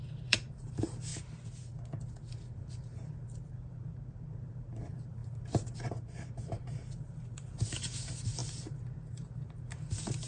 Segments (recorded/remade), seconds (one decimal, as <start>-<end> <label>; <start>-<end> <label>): 0.0-1.1 remade; 1.1-2.3 recorded; 2.3-10.3 remade